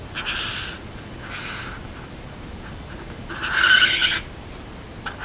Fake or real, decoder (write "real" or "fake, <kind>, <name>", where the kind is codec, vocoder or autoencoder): real